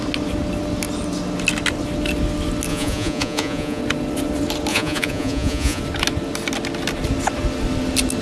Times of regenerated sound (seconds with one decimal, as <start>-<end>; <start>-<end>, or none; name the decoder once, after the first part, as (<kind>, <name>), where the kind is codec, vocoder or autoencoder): 2.7-3.8 (vocoder, Vocos); 4.7-5.8